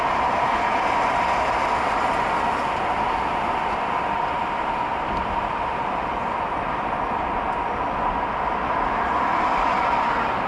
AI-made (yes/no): no